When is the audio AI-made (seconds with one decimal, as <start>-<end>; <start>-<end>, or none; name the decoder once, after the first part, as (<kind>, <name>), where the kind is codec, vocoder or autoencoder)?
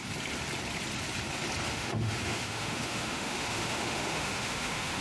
1.7-5.0 (autoencoder, DAC-VAE)